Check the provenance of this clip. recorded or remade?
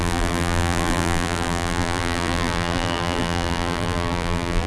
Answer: remade